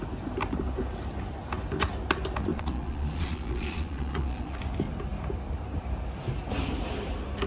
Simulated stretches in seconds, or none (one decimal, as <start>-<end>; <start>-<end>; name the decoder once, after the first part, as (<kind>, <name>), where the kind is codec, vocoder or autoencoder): 2.5-4.6 (vocoder, Vocos)